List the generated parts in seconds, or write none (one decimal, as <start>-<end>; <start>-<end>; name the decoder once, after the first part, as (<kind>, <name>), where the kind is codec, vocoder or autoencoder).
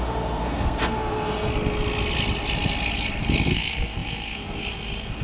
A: 0.0-1.5 (codec, SNAC); 3.4-5.2